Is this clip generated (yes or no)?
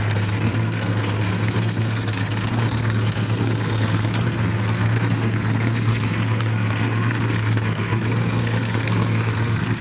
yes